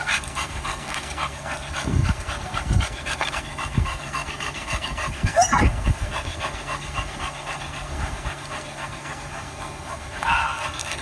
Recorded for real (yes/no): no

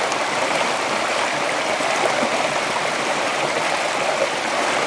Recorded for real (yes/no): yes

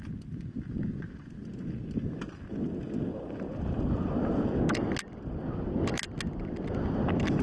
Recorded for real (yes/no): yes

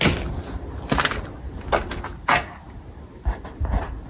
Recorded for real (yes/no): yes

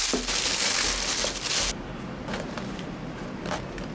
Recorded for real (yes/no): yes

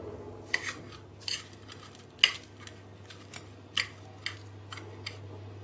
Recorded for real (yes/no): yes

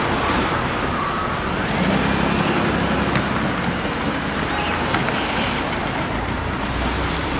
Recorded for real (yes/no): yes